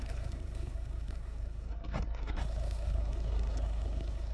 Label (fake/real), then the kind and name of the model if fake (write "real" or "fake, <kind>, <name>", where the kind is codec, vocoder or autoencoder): fake, codec, SNAC